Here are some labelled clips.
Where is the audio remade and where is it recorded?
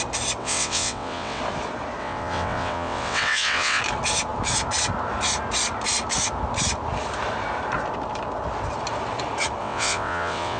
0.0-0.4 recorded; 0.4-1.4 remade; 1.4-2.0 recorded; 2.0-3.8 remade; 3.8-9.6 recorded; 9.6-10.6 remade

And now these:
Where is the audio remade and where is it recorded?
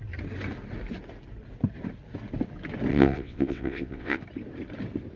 0.0-2.9 recorded; 2.9-4.2 remade; 4.2-5.2 recorded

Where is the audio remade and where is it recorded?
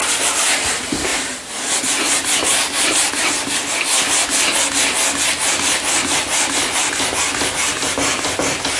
0.0-8.8 recorded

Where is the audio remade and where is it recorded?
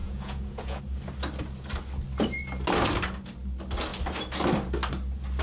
0.0-0.8 remade; 0.8-5.4 recorded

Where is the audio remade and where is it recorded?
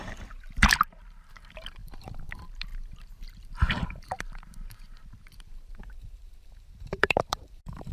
0.0-7.9 remade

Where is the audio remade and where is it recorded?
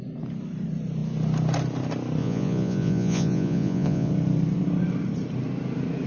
0.0-2.2 recorded; 2.2-4.1 remade; 4.1-6.1 recorded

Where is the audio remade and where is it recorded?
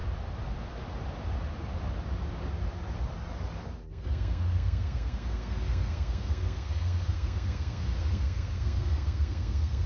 0.0-3.9 recorded; 3.9-9.9 remade